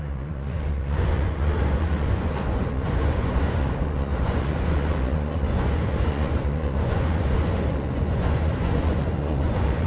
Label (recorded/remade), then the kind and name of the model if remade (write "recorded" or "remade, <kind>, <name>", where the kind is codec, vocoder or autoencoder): remade, vocoder, Vocos